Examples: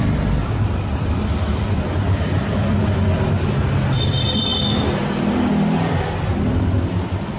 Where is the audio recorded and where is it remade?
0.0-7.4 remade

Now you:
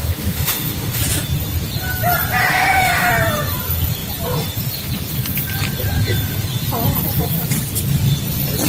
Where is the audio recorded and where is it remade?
0.0-1.0 remade; 1.0-2.4 recorded; 2.4-3.1 remade; 3.1-8.7 recorded

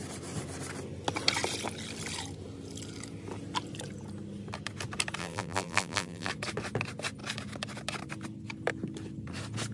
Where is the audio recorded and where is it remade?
0.0-5.2 recorded; 5.2-6.3 remade; 6.3-9.7 recorded